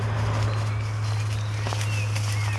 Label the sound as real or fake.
real